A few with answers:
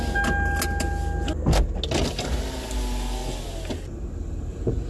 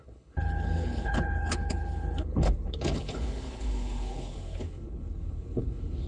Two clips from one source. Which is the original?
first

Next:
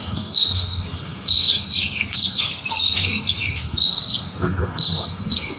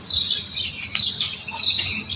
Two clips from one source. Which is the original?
second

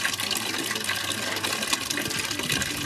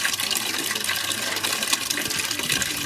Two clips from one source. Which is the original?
first